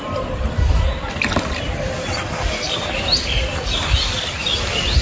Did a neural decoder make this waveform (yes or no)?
no